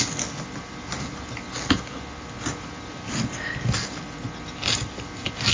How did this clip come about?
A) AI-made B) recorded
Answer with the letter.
B